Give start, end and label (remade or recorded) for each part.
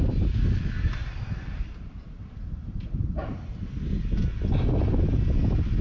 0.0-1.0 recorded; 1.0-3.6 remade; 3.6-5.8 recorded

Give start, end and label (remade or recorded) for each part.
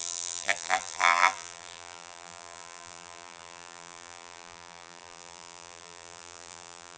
0.0-7.0 remade